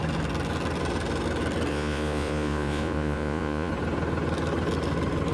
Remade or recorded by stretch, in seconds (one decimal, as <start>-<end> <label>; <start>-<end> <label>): 0.0-1.7 recorded; 1.7-3.7 remade; 3.7-5.3 recorded